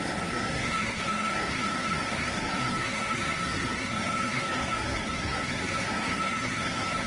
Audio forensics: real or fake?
fake